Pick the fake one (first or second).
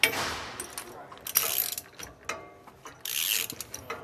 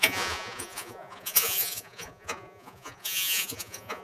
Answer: second